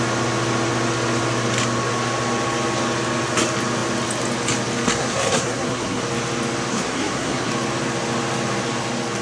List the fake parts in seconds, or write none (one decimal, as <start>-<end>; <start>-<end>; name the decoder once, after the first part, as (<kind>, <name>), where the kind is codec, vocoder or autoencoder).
5.0-6.0 (codec, SNAC); 6.7-7.5